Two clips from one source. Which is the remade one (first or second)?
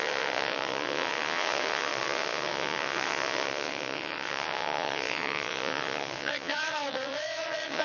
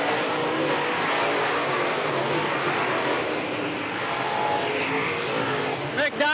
first